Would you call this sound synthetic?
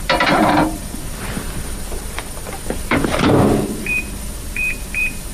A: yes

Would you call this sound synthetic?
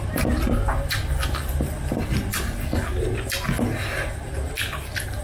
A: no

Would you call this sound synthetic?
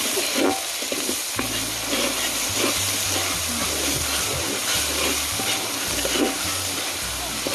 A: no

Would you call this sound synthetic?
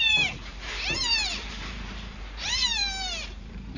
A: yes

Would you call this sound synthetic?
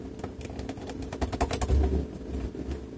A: no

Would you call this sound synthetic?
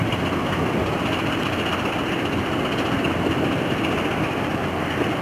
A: no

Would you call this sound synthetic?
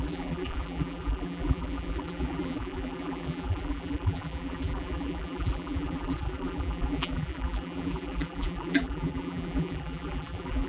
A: yes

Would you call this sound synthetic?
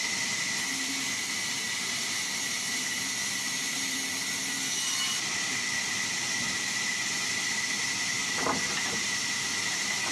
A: no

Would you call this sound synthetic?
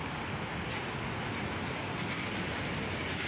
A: no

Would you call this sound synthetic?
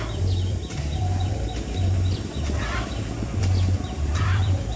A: yes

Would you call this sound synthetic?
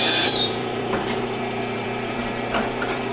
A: yes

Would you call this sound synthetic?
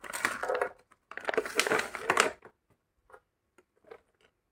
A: no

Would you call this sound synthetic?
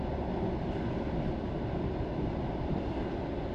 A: no